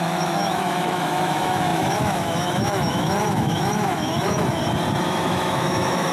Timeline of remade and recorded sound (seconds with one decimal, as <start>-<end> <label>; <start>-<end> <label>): 0.0-4.6 remade; 4.6-5.1 recorded; 5.1-6.1 remade